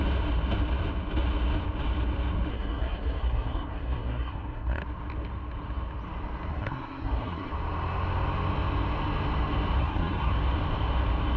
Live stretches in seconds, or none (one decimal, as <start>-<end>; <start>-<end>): 0.0-2.5; 4.8-6.5; 7.5-9.8; 10.3-11.4